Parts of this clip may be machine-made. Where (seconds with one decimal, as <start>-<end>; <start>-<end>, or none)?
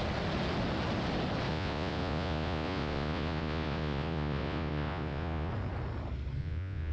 1.5-5.5; 6.4-6.9